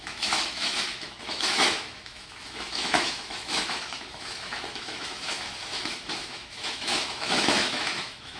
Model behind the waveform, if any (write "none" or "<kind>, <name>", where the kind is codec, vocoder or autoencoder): autoencoder, DAC-VAE